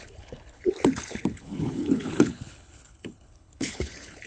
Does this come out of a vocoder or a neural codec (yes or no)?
yes